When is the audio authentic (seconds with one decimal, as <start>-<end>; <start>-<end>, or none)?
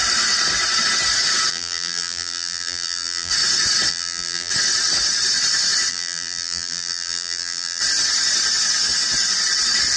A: 0.0-1.5; 3.3-3.9; 4.5-5.9; 7.8-10.0